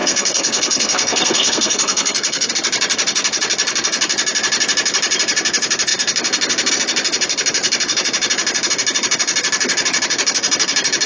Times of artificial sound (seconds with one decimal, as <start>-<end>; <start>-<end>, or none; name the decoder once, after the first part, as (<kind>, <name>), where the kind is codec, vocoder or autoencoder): 0.0-2.5 (codec, SNAC)